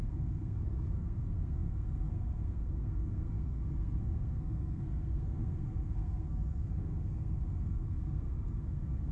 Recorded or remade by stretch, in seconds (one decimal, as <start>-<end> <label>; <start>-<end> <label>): 0.0-9.1 remade